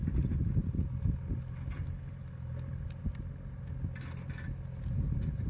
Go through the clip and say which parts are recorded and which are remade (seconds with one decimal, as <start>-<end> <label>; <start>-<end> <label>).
0.0-5.5 recorded